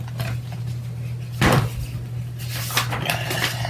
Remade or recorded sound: recorded